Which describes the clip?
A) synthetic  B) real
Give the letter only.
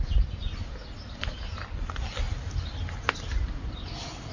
B